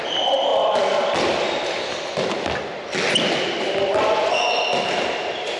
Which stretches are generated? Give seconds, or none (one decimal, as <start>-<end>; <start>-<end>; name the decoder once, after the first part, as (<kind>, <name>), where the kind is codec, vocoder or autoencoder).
none